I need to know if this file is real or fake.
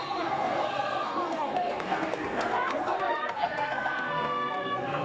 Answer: fake